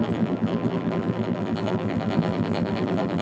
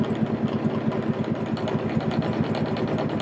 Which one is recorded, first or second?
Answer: second